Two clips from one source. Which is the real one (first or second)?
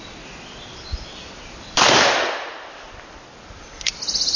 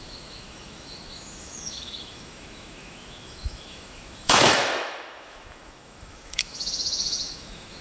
first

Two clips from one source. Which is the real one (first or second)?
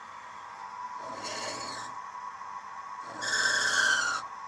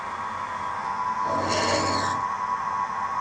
second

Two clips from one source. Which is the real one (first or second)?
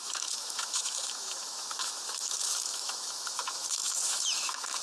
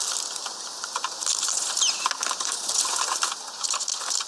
second